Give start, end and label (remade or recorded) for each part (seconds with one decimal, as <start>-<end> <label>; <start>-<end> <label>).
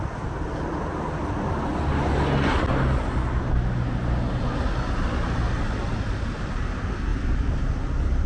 0.0-8.3 recorded